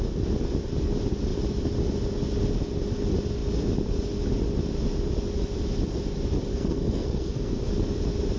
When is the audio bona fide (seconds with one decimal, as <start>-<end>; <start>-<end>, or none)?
0.0-6.5; 7.7-8.4